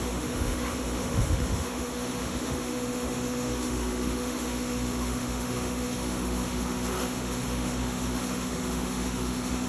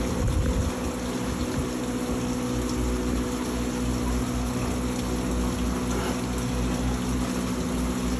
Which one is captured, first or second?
second